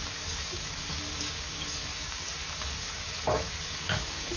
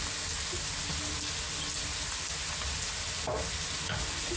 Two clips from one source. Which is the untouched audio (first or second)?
second